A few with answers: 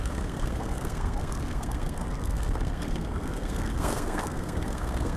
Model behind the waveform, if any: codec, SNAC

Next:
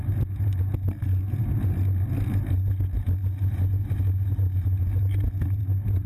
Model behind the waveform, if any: none